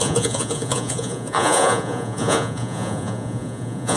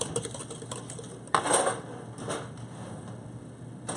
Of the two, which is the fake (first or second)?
first